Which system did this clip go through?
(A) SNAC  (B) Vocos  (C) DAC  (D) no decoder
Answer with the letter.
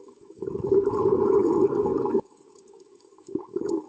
C